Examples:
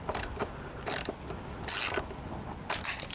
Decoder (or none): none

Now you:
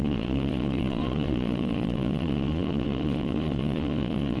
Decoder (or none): vocoder, Vocos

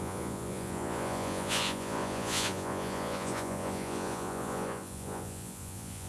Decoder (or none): vocoder, Vocos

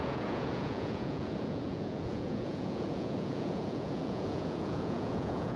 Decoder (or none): vocoder, Vocos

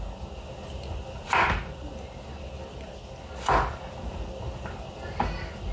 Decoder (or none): none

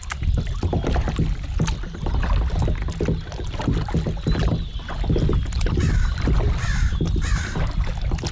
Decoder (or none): none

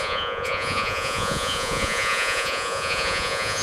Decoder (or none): vocoder, Vocos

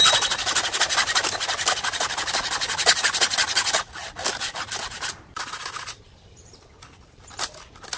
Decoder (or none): none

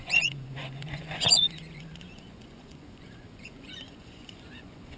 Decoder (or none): vocoder, Vocos